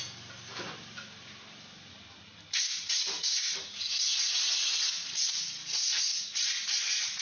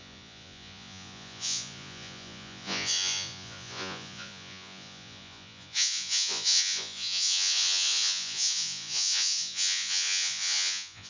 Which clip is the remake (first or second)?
second